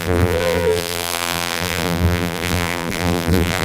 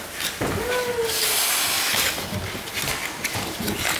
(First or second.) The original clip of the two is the second